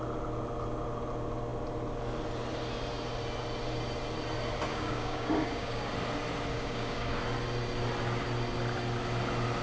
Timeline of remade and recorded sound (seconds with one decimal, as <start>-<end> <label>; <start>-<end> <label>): 0.0-4.7 recorded; 4.7-5.9 remade; 5.9-6.5 recorded; 6.5-7.2 remade; 7.2-9.6 recorded